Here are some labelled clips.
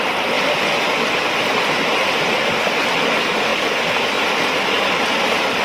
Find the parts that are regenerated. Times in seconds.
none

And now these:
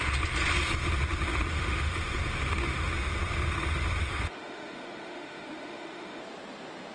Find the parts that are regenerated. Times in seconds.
1.3-2.9 (autoencoder, DAC-VAE); 4.1-6.2

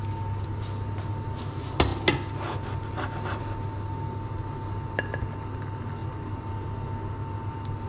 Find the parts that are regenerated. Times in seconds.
none

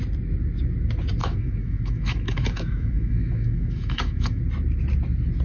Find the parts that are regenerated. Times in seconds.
1.2-4.4 (autoencoder, DAC-VAE)

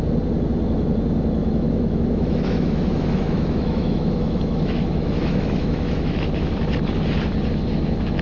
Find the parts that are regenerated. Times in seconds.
1.4-6.3 (autoencoder, DAC-VAE)

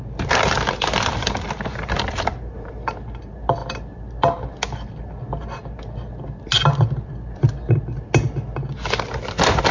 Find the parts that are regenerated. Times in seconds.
none

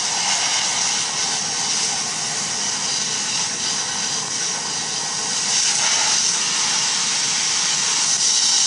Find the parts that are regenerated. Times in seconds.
none